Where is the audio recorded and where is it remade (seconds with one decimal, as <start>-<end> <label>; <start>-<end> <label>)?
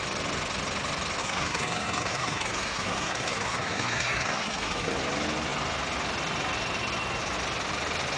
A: 0.0-1.2 recorded; 1.2-4.9 remade; 4.9-8.2 recorded